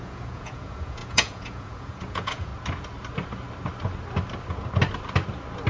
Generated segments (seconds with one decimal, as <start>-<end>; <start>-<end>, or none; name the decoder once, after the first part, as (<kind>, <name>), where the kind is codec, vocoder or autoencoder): 0.0-2.5 (vocoder, Vocos)